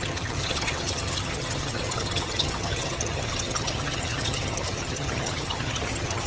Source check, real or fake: fake